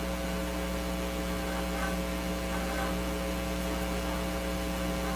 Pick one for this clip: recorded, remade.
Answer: recorded